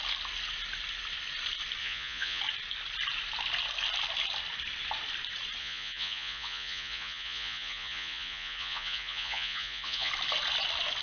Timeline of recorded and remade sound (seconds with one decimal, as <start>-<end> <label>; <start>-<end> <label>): 0.0-1.8 recorded; 1.8-2.4 remade; 2.4-5.6 recorded; 5.6-10.1 remade; 10.1-11.0 recorded